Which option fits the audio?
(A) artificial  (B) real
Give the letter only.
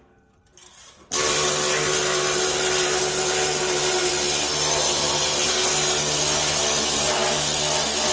B